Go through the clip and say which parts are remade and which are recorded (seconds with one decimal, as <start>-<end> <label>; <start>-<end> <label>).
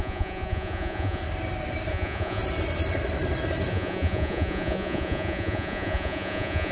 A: 0.0-1.2 remade; 1.2-1.9 recorded; 1.9-2.4 remade; 2.4-3.7 recorded; 3.7-6.7 remade